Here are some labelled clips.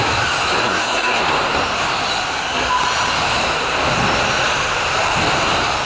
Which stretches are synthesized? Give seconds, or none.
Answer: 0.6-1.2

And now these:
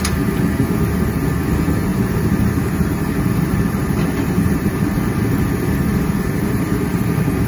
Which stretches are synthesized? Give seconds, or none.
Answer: 1.9-5.2; 5.9-7.5

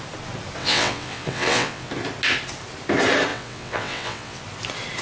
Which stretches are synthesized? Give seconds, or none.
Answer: 0.6-1.9; 3.3-4.4